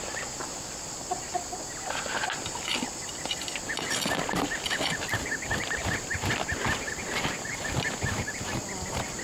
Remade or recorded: recorded